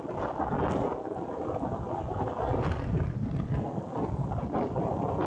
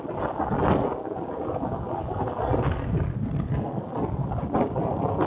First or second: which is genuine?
second